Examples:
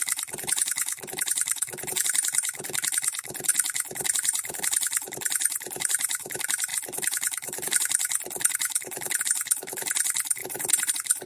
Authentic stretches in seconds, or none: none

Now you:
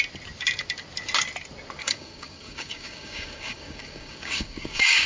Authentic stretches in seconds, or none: 0.0-1.8